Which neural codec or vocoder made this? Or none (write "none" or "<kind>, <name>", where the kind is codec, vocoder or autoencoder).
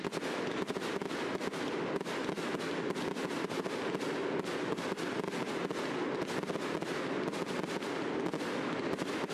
none